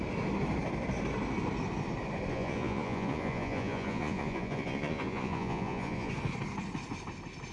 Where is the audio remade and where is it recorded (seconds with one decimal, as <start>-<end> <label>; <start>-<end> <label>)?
0.0-2.3 recorded; 2.3-6.1 remade; 6.1-7.5 recorded